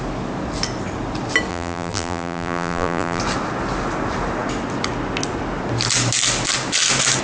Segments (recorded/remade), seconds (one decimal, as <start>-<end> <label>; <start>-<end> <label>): 0.0-1.5 recorded; 1.5-3.2 remade; 3.2-7.2 recorded